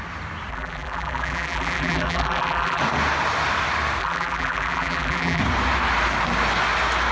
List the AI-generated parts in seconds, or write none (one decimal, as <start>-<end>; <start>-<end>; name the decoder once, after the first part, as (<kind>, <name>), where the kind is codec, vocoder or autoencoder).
0.5-2.8 (vocoder, BigVGAN v2); 4.0-5.4